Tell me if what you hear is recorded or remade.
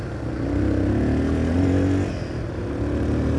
recorded